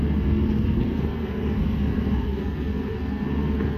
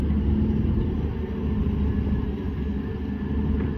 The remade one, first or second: first